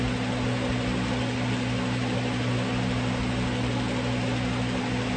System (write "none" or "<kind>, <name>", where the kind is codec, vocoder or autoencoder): none